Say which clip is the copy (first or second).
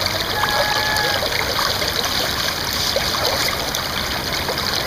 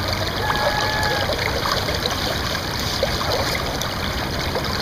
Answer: second